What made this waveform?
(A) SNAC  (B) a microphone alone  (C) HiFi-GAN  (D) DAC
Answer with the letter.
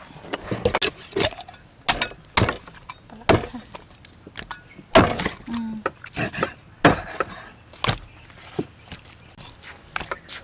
B